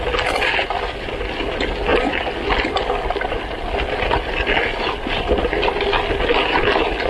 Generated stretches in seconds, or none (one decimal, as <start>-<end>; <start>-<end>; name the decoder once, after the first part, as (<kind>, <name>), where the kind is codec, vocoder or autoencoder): none